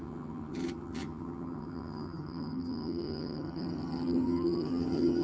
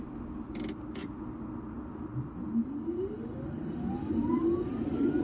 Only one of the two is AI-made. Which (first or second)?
first